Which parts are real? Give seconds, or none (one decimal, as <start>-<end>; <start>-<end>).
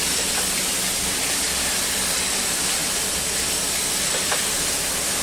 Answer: 0.0-5.2